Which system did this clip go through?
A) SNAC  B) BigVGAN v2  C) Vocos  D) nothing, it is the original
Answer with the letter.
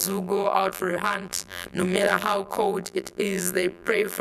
B